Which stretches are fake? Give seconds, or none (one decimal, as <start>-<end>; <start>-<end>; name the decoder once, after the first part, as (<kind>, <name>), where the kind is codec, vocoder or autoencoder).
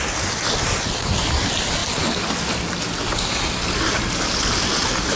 none